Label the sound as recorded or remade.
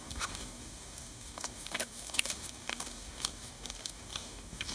remade